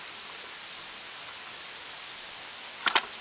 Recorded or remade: recorded